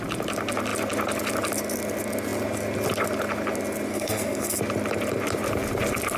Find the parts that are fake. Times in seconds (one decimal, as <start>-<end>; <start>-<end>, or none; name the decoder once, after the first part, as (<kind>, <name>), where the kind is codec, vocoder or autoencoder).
3.9-4.6 (codec, SNAC)